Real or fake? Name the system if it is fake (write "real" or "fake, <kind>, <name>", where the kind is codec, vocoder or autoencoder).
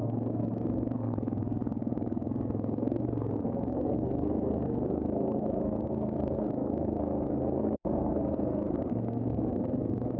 fake, codec, SNAC